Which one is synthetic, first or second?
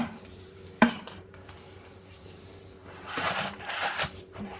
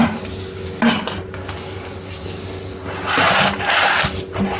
first